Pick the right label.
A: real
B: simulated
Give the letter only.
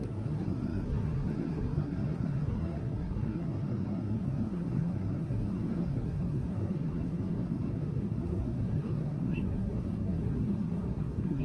B